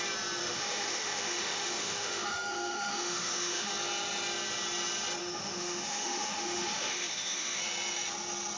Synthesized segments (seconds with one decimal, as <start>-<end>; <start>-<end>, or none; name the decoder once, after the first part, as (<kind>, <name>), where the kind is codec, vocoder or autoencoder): 0.4-3.7 (autoencoder, DAC-VAE); 5.2-7.6